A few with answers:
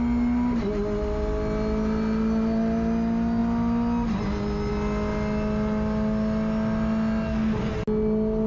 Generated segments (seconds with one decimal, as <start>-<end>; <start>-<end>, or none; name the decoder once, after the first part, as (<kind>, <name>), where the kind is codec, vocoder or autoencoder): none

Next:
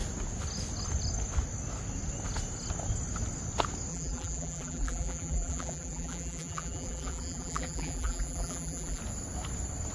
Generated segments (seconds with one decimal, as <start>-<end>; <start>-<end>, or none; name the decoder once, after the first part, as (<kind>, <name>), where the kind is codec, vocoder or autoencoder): 3.9-9.0 (vocoder, BigVGAN v2)

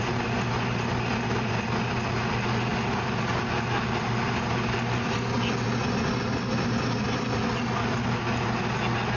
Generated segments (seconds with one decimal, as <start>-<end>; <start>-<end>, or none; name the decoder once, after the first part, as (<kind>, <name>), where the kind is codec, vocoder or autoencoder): none

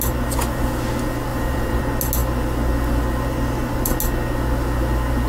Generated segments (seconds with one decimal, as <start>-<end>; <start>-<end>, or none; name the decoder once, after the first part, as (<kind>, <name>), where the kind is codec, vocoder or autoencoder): 1.3-1.8 (vocoder, BigVGAN v2)